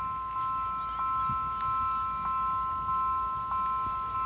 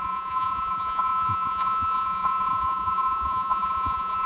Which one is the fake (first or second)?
second